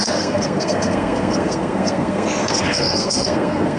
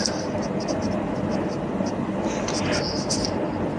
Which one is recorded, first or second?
second